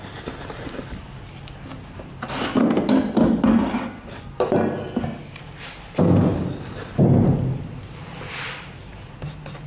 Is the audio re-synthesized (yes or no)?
no